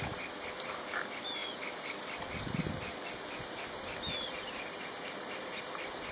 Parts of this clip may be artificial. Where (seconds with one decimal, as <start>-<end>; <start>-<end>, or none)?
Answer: none